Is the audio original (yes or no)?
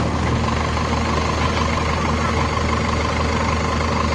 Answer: yes